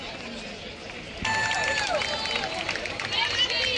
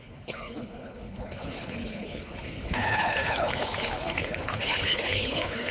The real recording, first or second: first